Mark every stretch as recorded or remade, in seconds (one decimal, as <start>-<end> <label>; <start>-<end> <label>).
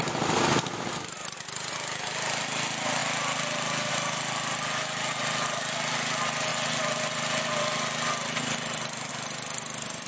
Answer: 0.0-10.1 recorded